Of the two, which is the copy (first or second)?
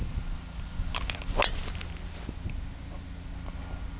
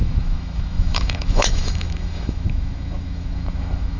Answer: second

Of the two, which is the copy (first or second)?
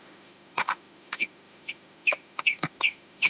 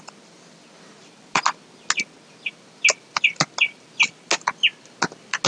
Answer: first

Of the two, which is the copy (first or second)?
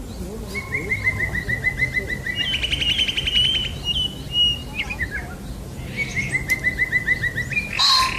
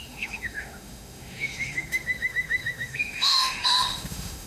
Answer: second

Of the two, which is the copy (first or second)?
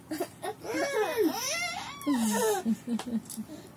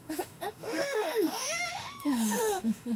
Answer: second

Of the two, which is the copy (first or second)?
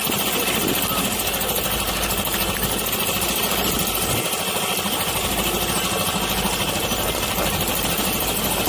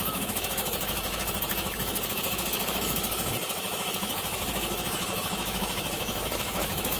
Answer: second